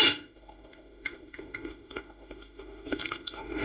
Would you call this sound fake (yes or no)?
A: yes